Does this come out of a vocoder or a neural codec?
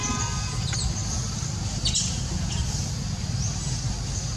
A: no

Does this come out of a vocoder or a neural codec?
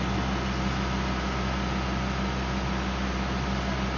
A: no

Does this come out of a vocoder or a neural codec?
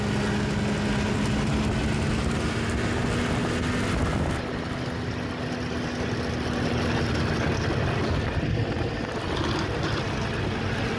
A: no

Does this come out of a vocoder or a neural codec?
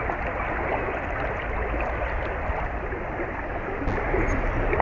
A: no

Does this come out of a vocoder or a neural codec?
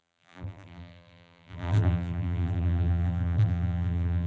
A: yes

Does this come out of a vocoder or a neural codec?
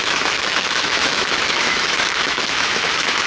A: yes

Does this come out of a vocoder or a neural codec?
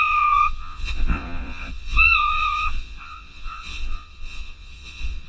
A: yes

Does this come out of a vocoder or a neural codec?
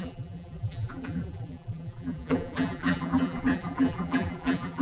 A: yes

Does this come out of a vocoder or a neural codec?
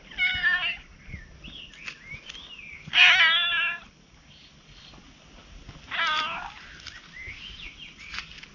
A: no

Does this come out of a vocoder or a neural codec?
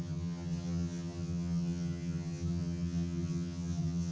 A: yes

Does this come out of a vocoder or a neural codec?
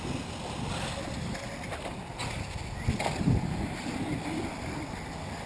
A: no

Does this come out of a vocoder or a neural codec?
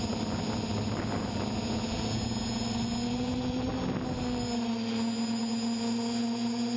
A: no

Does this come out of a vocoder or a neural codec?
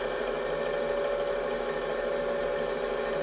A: no